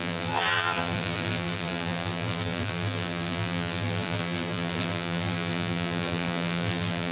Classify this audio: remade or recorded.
remade